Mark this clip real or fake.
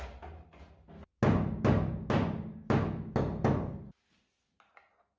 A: real